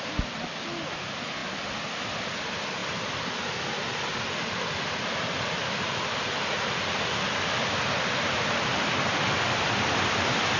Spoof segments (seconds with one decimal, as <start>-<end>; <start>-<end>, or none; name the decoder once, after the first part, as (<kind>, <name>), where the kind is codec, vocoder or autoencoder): 2.8-3.4 (vocoder, BigVGAN v2)